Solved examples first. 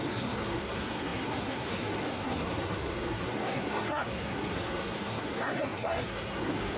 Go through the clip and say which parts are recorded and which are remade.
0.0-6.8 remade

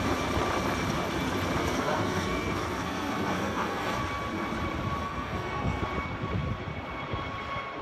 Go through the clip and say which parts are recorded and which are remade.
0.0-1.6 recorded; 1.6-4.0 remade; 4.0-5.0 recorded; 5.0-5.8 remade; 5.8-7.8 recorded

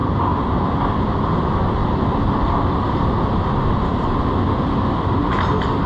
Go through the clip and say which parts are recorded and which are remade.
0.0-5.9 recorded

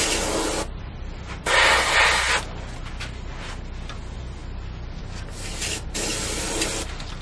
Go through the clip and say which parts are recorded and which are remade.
0.0-7.2 recorded